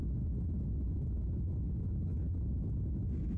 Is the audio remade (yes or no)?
no